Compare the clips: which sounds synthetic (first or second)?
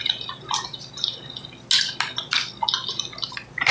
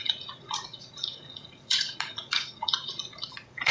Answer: second